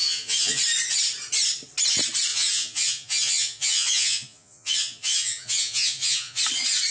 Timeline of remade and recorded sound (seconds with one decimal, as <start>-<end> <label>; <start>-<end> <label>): 0.0-0.6 remade; 0.6-2.3 recorded; 2.3-6.4 remade; 6.4-6.9 recorded